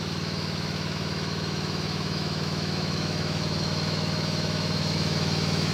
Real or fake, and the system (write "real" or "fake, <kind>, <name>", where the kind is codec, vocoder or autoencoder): fake, autoencoder, DAC-VAE